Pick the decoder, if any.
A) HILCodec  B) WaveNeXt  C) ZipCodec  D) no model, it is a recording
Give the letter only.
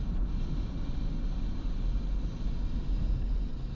D